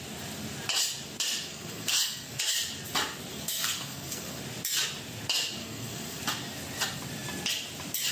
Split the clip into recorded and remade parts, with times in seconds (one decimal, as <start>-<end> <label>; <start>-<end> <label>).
0.0-1.5 recorded; 1.5-2.4 remade; 2.4-3.3 recorded; 3.3-4.4 remade; 4.4-5.6 recorded; 5.6-6.2 remade; 6.2-8.1 recorded